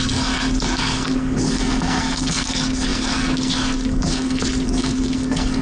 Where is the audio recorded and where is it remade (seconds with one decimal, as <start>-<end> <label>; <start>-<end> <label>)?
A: 0.0-5.6 remade